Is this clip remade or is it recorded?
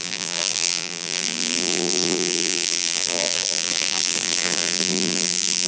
remade